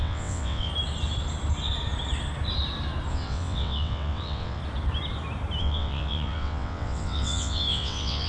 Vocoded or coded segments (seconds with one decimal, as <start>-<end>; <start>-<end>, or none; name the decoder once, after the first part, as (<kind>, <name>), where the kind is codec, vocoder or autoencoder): 0.0-0.7 (vocoder, WaveNeXt); 3.1-4.6; 5.6-8.3